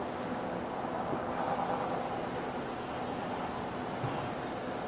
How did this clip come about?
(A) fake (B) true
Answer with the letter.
B